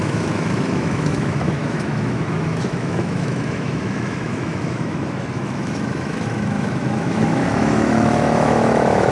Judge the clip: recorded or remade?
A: remade